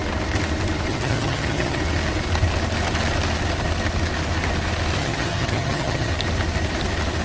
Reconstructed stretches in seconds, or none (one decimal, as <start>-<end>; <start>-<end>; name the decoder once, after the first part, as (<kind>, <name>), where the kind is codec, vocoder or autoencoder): 0.9-1.8 (vocoder, HiFi-GAN); 5.0-6.1